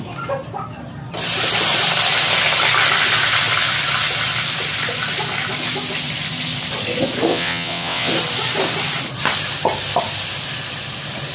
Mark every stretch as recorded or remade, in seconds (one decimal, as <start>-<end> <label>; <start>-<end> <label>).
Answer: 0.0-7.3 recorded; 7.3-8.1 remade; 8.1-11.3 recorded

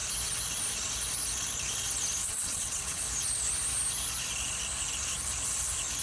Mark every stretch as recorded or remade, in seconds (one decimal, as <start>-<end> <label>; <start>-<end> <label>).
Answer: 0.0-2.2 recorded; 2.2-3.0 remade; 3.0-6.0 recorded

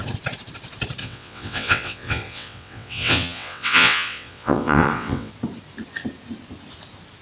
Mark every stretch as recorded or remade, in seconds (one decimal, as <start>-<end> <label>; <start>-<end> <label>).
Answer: 0.0-1.0 recorded; 1.0-5.3 remade; 5.3-7.2 recorded

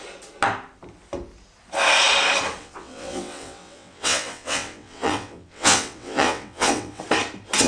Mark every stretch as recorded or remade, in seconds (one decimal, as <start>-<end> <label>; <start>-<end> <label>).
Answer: 0.0-2.6 recorded; 2.6-7.0 remade; 7.0-7.7 recorded